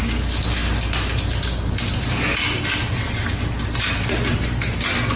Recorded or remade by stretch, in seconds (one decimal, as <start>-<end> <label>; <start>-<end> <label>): 0.0-5.2 recorded